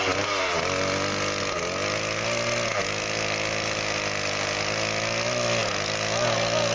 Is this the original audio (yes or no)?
yes